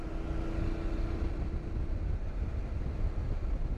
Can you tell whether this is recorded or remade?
recorded